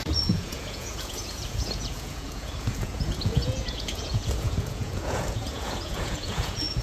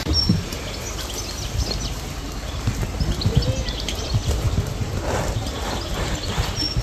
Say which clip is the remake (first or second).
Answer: first